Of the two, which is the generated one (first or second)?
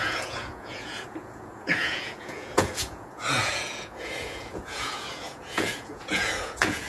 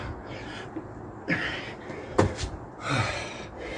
first